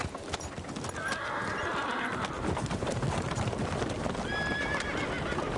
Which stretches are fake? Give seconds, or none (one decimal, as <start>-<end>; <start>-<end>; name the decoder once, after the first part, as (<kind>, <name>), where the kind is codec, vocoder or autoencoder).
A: none